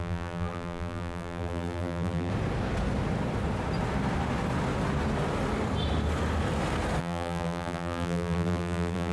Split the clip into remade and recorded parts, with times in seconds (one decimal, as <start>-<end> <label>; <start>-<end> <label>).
0.0-2.3 remade; 2.3-7.0 recorded; 7.0-9.1 remade